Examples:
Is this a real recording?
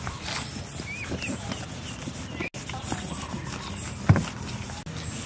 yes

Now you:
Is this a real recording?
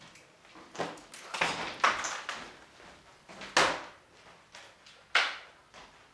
yes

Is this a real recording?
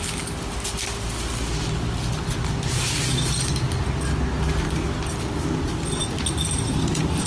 yes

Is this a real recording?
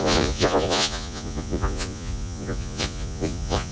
no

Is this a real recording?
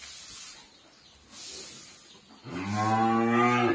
yes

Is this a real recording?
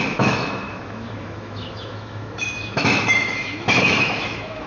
no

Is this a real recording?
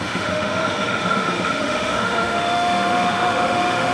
no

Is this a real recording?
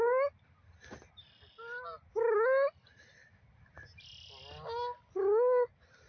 yes